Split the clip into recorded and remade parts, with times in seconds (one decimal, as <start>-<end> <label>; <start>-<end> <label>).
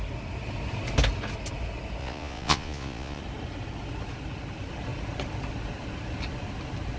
0.0-2.0 recorded; 2.0-3.2 remade; 3.2-7.0 recorded